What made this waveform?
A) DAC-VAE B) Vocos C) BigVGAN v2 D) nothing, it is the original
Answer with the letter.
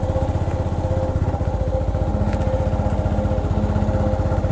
D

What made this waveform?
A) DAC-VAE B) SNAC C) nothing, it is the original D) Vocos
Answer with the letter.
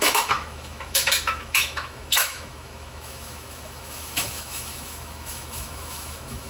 A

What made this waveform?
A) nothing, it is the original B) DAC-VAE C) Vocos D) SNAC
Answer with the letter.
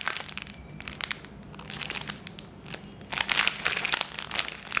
A